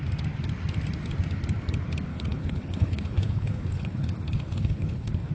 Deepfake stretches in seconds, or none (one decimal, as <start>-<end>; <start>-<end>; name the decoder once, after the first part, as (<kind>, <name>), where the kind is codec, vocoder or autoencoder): 2.1-5.3 (codec, HILCodec)